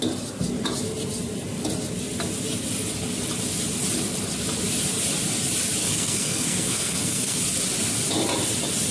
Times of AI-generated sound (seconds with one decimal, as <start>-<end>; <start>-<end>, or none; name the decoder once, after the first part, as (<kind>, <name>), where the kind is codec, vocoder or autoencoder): 5.8-7.4 (codec, SNAC)